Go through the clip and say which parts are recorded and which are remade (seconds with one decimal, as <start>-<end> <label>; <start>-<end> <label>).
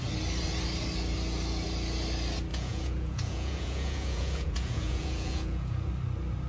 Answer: 0.0-2.5 recorded; 2.5-5.9 remade; 5.9-6.5 recorded